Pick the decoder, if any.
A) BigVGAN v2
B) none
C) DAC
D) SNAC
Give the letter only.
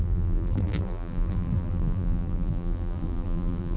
A